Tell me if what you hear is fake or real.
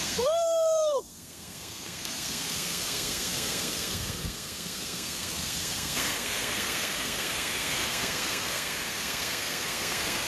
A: fake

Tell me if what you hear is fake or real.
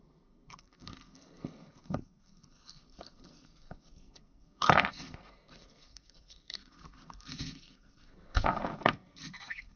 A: fake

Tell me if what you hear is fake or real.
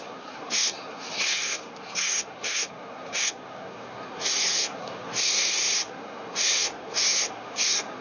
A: fake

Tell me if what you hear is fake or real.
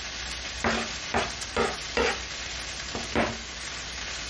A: real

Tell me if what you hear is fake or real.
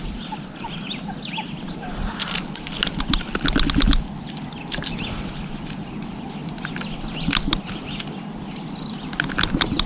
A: real